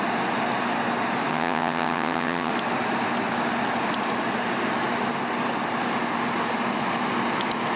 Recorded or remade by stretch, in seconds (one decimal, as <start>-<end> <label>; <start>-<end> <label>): 0.0-1.3 recorded; 1.3-2.5 remade; 2.5-7.8 recorded